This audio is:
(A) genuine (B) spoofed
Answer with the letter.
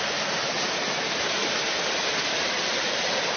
A